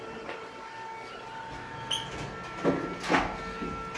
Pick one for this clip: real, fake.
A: real